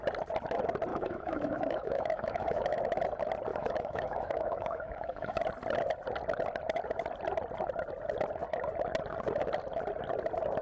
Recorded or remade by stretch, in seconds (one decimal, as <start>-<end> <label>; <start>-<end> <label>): 0.0-0.9 recorded; 0.9-2.8 remade; 2.8-3.5 recorded; 3.5-5.4 remade; 5.4-10.6 recorded

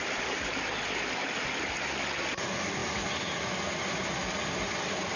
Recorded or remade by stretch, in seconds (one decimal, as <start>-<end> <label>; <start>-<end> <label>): 0.0-1.2 recorded; 1.2-1.7 remade; 1.7-5.2 recorded

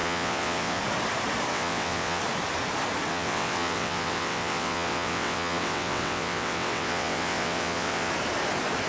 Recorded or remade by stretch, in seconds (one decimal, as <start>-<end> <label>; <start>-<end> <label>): 0.0-0.8 remade; 0.8-1.5 recorded; 1.5-2.2 remade; 2.2-3.1 recorded; 3.1-8.1 remade; 8.1-8.9 recorded

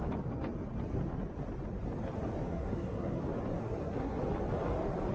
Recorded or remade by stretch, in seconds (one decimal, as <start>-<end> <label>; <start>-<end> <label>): 0.0-2.5 recorded; 2.5-3.2 remade; 3.2-3.6 recorded; 3.6-4.2 remade; 4.2-5.1 recorded